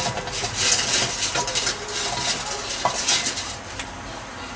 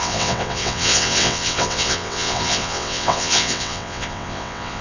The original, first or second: first